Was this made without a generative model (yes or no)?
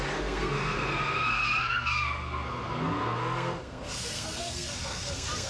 no